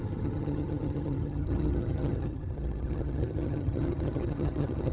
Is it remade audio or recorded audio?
remade